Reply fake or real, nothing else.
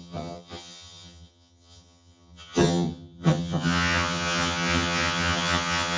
fake